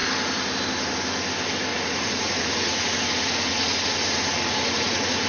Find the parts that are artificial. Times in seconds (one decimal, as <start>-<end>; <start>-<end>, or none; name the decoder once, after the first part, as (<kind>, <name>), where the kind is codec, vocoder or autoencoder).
1.7-5.3 (vocoder, Vocos)